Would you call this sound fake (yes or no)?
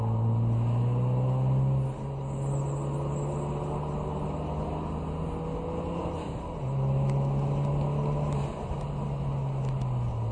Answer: no